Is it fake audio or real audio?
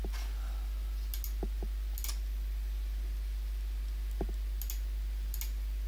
real